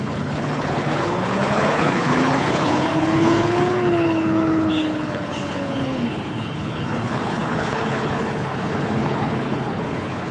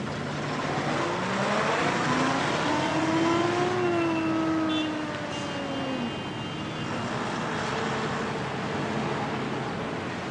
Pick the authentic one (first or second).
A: second